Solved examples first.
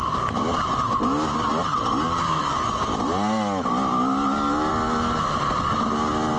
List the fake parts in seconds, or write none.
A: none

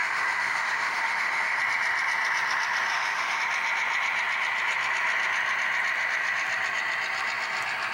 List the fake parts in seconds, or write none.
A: 0.0-1.6 (autoencoder, DAC-VAE); 2.9-3.4